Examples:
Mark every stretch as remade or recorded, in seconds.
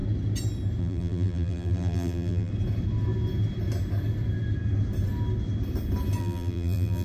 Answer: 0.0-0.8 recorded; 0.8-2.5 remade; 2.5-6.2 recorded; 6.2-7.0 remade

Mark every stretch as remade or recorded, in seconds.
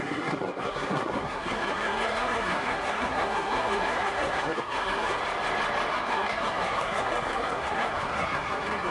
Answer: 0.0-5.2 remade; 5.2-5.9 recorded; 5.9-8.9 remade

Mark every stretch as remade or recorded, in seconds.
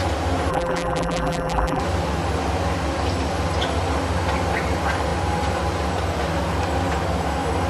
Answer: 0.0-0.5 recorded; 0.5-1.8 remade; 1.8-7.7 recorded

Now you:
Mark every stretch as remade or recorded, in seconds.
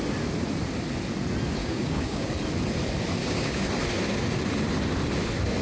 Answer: 0.0-1.6 recorded; 1.6-2.3 remade; 2.3-3.2 recorded; 3.2-3.7 remade; 3.7-5.6 recorded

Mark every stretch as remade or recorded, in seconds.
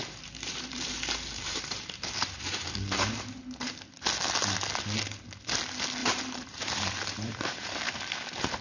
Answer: 0.0-3.7 remade; 3.7-6.0 recorded; 6.0-7.9 remade; 7.9-8.6 recorded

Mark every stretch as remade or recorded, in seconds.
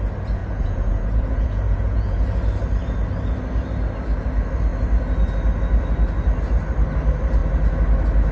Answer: 0.0-0.4 recorded; 0.4-2.2 remade; 2.2-8.3 recorded